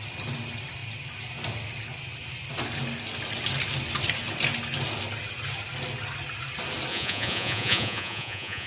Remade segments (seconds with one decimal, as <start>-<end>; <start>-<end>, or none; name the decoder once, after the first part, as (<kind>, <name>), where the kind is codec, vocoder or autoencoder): 6.9-8.7 (vocoder, Vocos)